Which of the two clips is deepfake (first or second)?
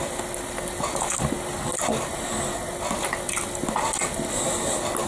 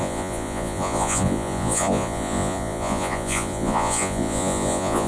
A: second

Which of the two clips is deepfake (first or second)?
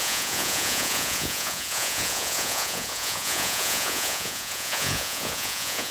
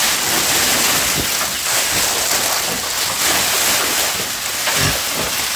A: first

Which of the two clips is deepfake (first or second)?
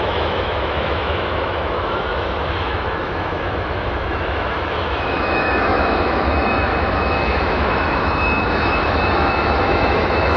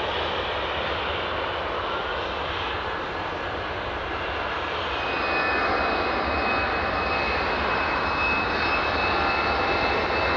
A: first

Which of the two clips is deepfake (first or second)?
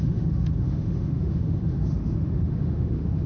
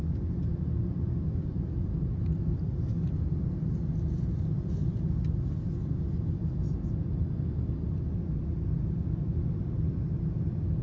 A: first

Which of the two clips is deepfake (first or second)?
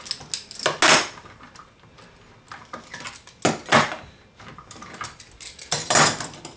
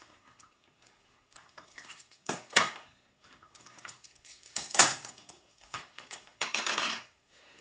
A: second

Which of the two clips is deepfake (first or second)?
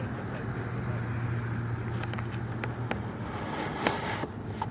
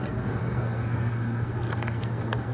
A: second